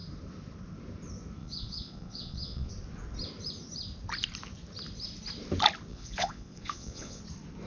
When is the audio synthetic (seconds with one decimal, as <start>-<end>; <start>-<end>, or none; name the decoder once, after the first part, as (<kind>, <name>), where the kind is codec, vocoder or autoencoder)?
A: 1.4-2.7 (vocoder, Vocos); 5.9-7.2